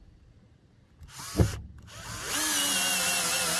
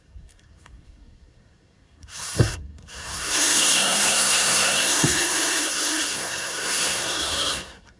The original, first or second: first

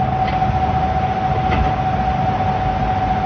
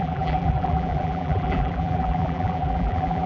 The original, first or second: first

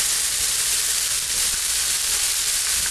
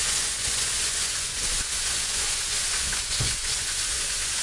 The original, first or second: first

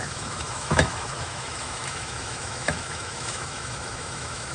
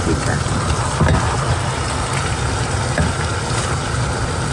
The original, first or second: second